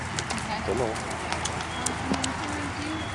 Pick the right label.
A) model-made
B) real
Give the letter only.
B